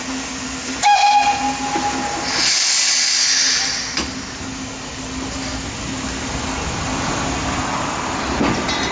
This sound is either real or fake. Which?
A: real